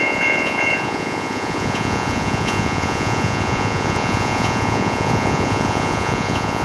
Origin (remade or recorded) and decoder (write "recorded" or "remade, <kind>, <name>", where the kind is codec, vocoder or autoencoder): remade, vocoder, Vocos